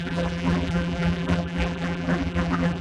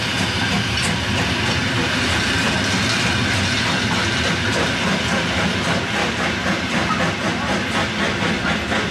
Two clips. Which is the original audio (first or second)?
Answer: second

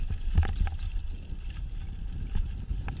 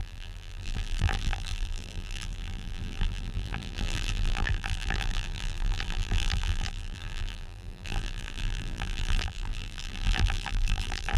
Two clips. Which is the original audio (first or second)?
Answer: first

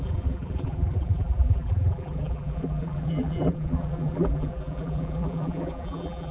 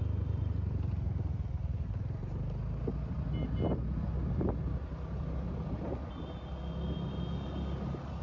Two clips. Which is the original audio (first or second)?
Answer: second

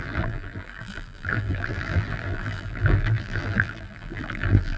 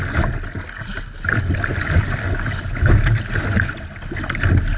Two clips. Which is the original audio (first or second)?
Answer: second